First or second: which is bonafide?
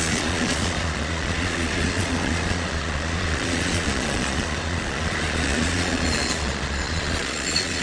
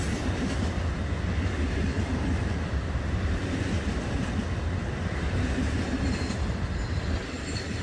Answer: second